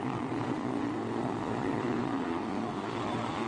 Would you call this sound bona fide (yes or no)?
no